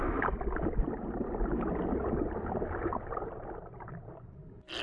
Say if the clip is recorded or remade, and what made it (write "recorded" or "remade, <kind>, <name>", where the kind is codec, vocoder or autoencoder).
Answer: recorded